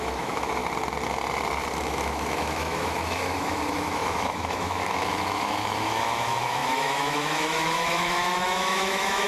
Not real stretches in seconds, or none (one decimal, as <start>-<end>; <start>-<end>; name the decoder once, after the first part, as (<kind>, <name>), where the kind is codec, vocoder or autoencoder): 0.0-0.6 (autoencoder, DAC-VAE); 1.8-9.3